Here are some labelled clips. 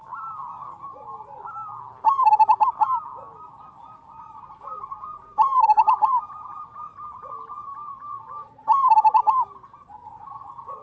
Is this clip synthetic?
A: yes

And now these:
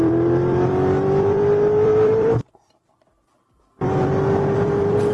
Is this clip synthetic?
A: yes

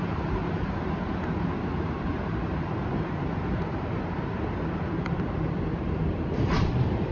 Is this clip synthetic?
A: yes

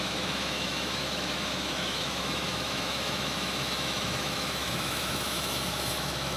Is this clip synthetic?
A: yes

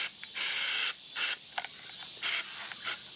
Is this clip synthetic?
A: no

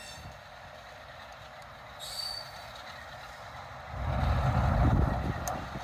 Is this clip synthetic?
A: no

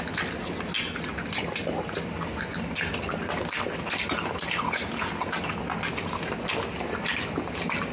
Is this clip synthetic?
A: no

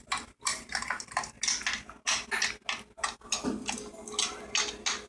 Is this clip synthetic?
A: no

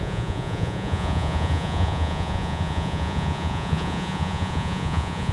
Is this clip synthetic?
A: yes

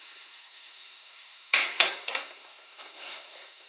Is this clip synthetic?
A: yes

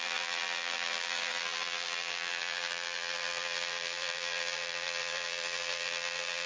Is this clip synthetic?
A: yes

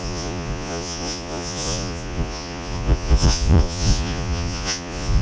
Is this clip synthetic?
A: yes